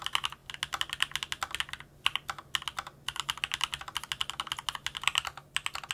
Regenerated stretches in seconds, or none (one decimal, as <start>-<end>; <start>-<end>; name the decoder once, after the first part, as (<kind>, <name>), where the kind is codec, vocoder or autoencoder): none